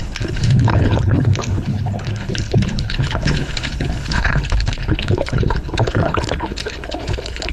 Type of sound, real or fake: fake